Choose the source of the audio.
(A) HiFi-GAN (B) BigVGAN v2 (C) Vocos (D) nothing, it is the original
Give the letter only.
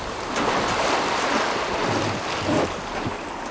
D